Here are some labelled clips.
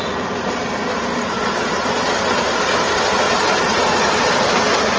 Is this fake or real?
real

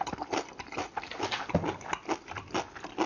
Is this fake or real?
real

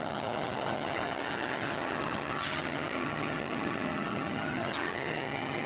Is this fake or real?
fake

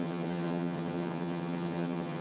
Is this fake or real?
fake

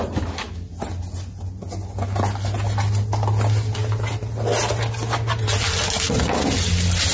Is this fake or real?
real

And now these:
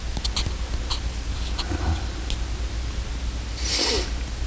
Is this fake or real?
real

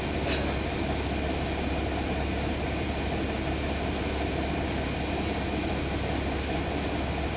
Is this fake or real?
real